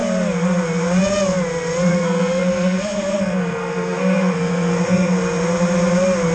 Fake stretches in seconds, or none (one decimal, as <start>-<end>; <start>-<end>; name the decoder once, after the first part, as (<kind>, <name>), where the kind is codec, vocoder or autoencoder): 1.9-5.2 (codec, SNAC)

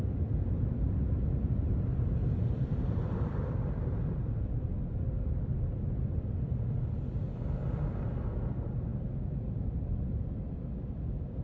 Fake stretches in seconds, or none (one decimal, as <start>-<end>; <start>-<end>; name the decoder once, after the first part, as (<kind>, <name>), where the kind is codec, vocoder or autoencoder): none